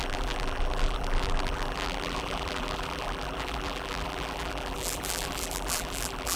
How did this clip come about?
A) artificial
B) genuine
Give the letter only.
A